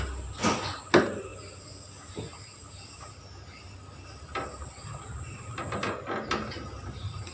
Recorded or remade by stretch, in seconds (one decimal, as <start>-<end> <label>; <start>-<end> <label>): 0.0-7.3 recorded